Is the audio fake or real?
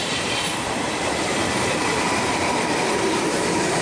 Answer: fake